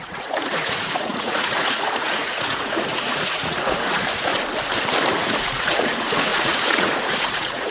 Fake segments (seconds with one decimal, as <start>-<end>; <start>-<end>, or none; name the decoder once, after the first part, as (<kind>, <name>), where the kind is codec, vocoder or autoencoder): 0.0-4.3 (vocoder, Vocos); 5.2-7.7